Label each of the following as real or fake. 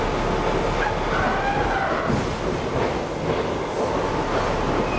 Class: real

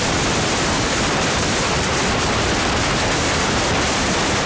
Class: fake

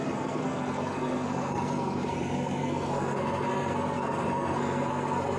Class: fake